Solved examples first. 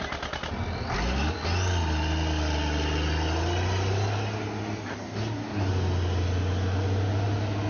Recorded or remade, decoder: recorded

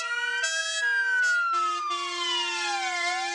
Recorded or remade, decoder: recorded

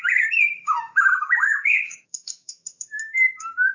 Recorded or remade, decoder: remade, autoencoder, DAC-VAE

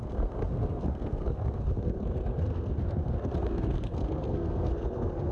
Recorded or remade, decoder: remade, codec, SNAC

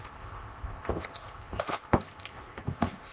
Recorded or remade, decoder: remade, codec, ZipCodec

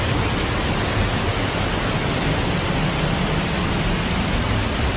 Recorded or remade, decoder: recorded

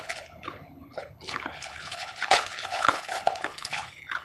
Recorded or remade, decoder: remade, codec, HILCodec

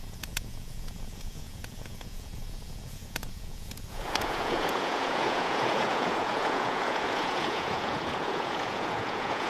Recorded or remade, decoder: remade, vocoder, Vocos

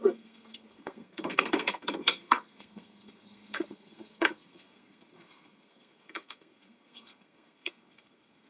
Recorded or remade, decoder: remade, codec, SNAC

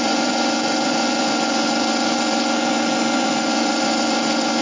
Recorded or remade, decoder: remade, vocoder, Vocos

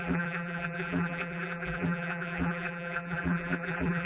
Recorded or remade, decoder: remade, vocoder, BigVGAN v2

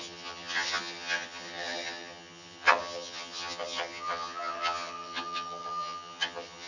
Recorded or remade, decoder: remade, vocoder, HiFi-GAN